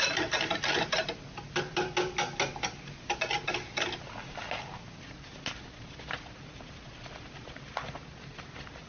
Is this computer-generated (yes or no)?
no